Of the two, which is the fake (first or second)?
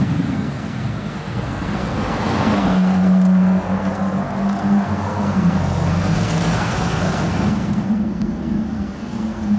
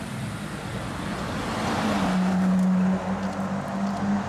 first